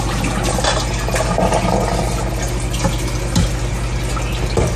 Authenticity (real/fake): real